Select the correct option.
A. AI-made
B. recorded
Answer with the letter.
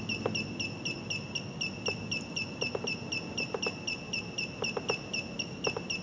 B